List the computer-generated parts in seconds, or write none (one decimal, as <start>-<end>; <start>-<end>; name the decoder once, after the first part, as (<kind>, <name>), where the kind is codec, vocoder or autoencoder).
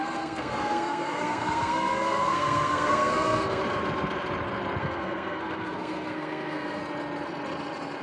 0.0-3.6 (codec, SNAC); 4.8-6.8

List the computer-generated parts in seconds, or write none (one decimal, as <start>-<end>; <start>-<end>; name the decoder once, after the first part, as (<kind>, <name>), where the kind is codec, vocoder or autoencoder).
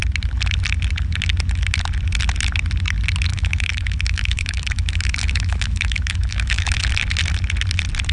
3.3-6.9 (autoencoder, DAC-VAE)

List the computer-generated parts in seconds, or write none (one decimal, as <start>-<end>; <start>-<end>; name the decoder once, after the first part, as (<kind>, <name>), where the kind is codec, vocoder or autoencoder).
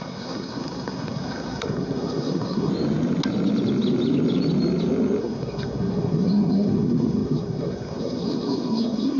0.0-2.7 (codec, SNAC); 5.2-9.2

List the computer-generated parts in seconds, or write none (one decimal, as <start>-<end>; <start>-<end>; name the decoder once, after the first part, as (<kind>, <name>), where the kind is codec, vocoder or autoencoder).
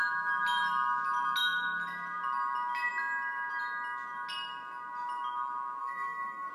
5.8-6.5 (codec, SNAC)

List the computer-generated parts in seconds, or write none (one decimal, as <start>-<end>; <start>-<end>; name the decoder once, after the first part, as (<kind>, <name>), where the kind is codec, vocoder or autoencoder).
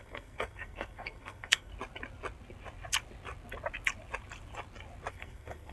0.0-1.7 (codec, SNAC); 5.1-5.7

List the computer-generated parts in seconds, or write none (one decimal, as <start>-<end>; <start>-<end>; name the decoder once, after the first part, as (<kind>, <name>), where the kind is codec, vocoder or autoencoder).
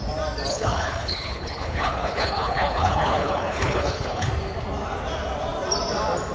0.5-4.3 (codec, HILCodec)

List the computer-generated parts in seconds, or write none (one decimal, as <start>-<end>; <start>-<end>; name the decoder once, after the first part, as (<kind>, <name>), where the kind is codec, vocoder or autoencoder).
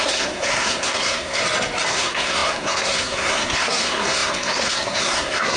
0.0-1.4 (codec, SNAC); 1.9-5.6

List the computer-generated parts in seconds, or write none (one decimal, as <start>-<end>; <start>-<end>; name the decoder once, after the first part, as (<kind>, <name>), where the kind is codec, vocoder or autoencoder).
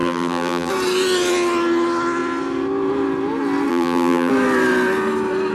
0.0-0.7 (vocoder, BigVGAN v2); 3.7-4.3